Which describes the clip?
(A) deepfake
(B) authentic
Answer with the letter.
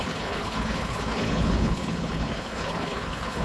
A